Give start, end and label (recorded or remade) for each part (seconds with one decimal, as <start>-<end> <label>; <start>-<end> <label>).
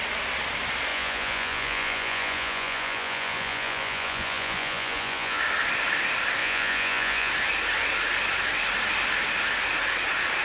0.0-0.9 recorded; 0.9-5.4 remade; 5.4-6.4 recorded; 6.4-7.3 remade; 7.3-10.4 recorded